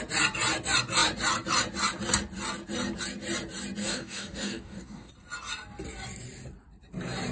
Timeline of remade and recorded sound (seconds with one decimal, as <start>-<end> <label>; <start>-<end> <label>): 0.0-3.8 recorded; 3.8-5.1 remade; 5.1-7.3 recorded